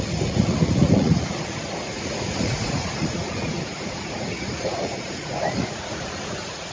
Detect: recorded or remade remade